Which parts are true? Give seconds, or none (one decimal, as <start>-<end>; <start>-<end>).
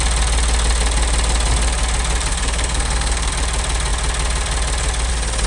0.0-2.3; 3.3-5.5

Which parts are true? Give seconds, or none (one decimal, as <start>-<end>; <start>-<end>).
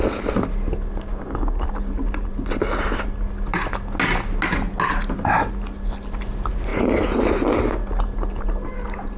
0.0-1.1; 1.6-9.2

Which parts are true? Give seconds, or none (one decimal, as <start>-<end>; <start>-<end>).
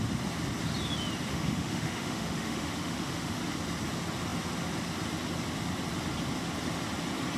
0.0-1.3; 3.4-7.4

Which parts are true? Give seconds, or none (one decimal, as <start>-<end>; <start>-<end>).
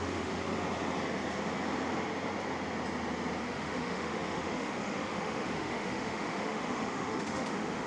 0.4-3.4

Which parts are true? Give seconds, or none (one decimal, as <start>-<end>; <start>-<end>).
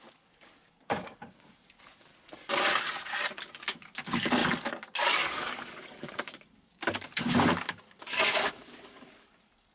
2.1-3.6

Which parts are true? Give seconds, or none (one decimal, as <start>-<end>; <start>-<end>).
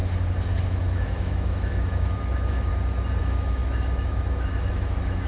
0.0-0.6; 2.7-3.2